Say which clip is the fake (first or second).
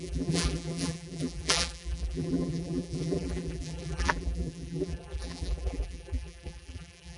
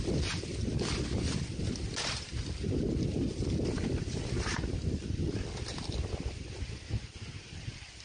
first